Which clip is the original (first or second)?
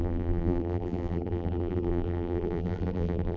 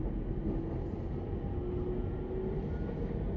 second